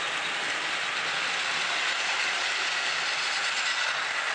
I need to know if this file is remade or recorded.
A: recorded